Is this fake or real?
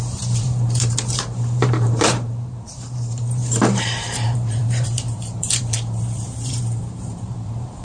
fake